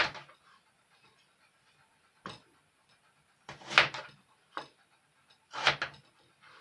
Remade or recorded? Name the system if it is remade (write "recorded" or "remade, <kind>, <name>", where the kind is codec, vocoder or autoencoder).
recorded